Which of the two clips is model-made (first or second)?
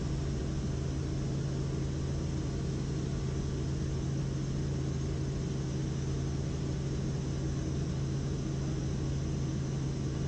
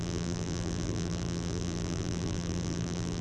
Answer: second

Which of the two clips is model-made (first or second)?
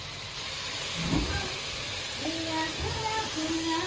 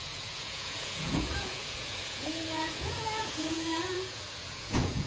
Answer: second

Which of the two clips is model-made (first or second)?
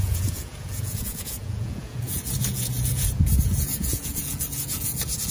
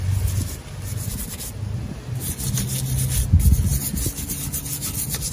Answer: first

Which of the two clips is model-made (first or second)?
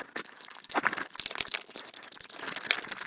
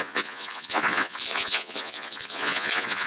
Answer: second